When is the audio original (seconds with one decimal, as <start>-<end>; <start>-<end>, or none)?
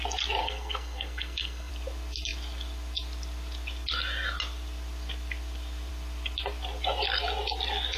0.0-0.4; 1.7-8.0